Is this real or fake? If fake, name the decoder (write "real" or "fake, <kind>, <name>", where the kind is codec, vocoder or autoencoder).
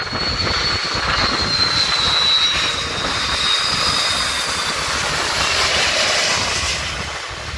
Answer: real